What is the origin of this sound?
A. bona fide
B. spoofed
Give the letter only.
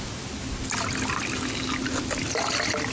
A